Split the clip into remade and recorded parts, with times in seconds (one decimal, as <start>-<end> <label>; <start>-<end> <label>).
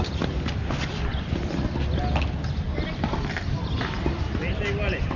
0.0-5.2 recorded